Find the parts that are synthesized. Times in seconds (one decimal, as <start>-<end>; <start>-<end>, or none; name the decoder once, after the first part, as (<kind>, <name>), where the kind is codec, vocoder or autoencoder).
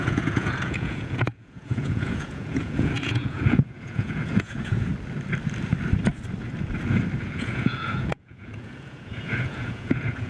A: 0.0-4.9 (vocoder, Vocos); 7.2-10.3